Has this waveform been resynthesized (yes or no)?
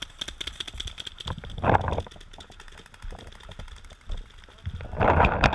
no